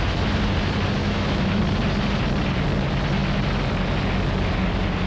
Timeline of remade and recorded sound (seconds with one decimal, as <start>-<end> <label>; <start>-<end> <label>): 0.0-1.0 recorded; 1.0-1.6 remade; 1.6-5.1 recorded